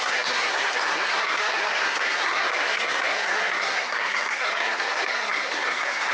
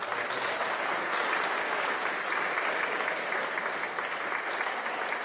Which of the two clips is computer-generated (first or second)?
first